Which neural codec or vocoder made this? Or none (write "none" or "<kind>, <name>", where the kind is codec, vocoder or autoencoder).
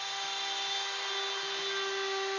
none